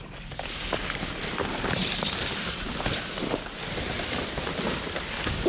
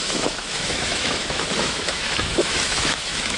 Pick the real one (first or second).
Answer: first